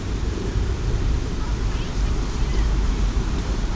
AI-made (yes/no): yes